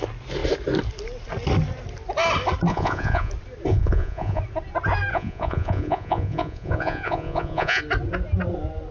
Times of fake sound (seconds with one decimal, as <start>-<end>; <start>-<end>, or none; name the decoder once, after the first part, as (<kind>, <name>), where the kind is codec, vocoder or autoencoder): 2.7-3.3 (vocoder, Vocos); 3.7-4.4; 5.1-7.8